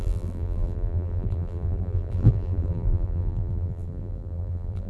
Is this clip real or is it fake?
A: fake